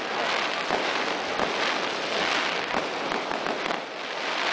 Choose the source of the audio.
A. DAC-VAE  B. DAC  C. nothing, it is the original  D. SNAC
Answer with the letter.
C